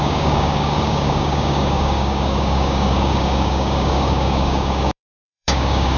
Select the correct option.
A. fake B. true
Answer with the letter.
A